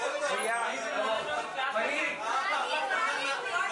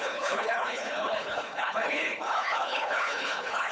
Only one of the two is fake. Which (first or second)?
second